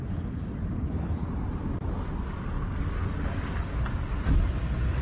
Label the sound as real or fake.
real